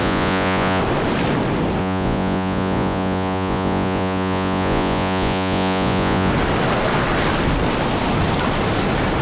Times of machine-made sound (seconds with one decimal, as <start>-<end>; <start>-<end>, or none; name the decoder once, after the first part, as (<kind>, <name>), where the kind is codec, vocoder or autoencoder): 0.0-0.8 (vocoder, Vocos); 1.8-6.3